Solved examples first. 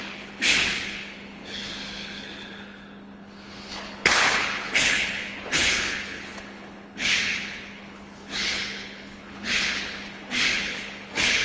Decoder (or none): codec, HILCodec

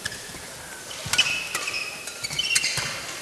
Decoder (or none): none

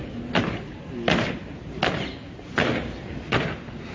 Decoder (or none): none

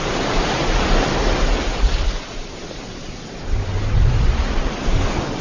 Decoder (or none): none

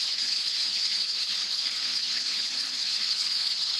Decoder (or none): codec, HILCodec